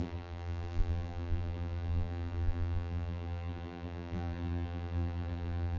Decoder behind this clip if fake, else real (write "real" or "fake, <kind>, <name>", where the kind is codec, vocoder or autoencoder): fake, vocoder, BigVGAN v2